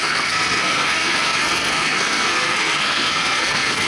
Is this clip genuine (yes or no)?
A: no